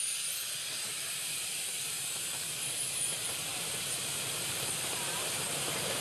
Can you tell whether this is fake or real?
fake